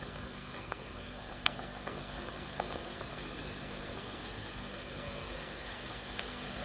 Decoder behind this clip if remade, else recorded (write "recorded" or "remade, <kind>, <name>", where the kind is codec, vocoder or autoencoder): remade, codec, SNAC